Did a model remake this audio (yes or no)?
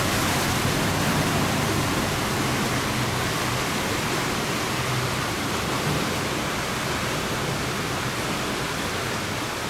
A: yes